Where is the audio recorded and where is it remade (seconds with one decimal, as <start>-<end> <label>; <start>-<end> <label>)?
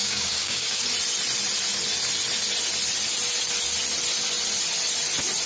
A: 0.0-0.8 remade; 0.8-5.5 recorded